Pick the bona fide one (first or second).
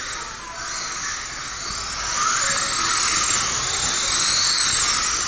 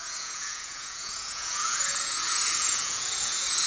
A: first